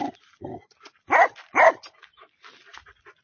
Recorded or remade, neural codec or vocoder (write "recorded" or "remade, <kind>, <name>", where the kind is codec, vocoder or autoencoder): recorded